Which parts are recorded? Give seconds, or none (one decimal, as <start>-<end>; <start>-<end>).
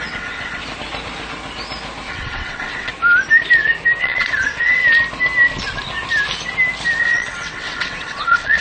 0.6-2.1; 2.9-4.0; 4.8-7.0